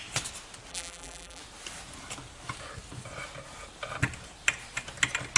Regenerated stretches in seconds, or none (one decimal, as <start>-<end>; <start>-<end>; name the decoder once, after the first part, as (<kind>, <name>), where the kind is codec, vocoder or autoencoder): 0.7-1.4 (vocoder, BigVGAN v2)